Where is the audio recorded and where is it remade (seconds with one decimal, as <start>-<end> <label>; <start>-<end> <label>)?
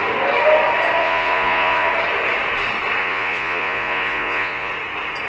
0.0-1.0 recorded; 1.0-1.9 remade; 1.9-3.0 recorded; 3.0-4.7 remade; 4.7-5.3 recorded